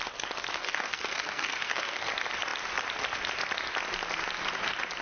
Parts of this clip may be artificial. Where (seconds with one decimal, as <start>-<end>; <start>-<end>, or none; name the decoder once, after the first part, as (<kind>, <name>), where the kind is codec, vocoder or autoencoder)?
0.5-2.1 (codec, SNAC)